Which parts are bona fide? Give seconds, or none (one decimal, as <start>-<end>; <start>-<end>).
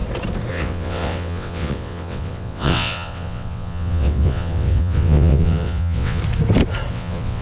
0.0-0.5; 6.2-6.9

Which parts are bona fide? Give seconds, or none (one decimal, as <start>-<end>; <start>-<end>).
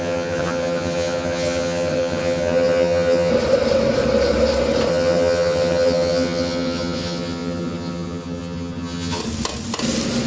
3.3-4.9; 9.2-10.3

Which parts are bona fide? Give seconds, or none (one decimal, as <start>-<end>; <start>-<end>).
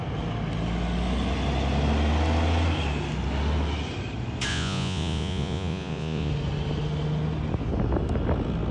0.0-4.5; 6.3-8.7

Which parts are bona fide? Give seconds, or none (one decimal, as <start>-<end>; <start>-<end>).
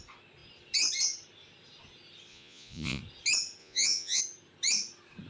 0.0-2.3; 3.0-3.6; 4.2-5.3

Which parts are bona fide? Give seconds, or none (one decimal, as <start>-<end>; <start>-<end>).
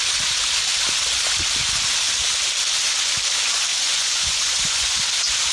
0.0-3.7; 5.0-5.5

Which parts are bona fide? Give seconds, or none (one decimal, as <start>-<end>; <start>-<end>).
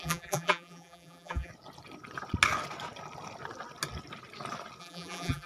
1.5-4.8